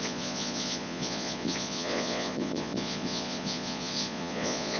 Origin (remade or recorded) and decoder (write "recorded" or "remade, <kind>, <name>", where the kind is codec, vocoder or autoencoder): remade, vocoder, Vocos